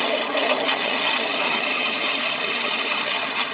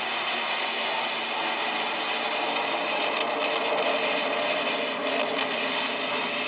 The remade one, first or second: first